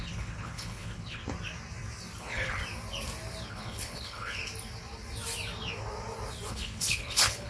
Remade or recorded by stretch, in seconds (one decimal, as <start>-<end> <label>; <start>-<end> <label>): 0.0-1.2 remade; 1.2-2.2 recorded; 2.2-2.6 remade; 2.6-3.5 recorded; 3.5-4.4 remade; 4.4-6.5 recorded; 6.5-7.5 remade